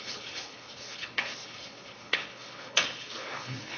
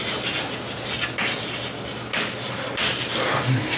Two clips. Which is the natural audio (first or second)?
second